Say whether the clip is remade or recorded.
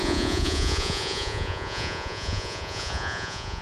remade